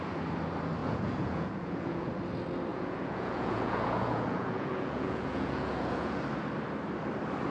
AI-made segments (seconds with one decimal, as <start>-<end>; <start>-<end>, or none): 0.8-2.2; 2.7-6.2